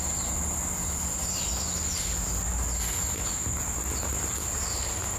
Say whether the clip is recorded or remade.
recorded